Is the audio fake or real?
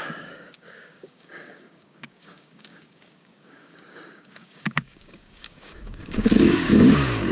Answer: fake